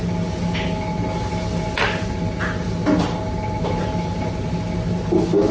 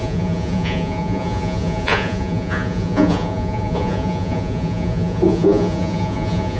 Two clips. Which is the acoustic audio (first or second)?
first